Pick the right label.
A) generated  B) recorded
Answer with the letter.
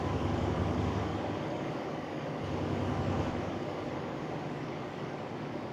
A